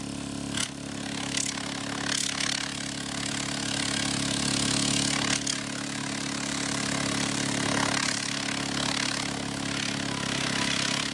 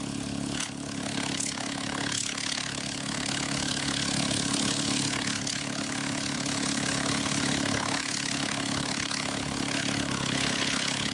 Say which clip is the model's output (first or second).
second